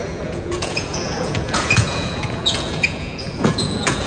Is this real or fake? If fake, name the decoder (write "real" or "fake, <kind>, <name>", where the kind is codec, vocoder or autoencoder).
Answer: fake, vocoder, Vocos